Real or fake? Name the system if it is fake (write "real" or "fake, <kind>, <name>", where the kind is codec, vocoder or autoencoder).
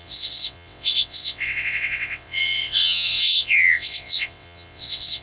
fake, vocoder, WaveNeXt